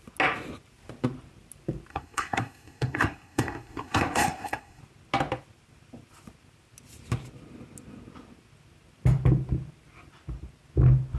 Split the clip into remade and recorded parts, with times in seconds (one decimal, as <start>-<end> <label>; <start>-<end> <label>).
0.0-1.9 recorded; 1.9-4.8 remade; 4.8-11.2 recorded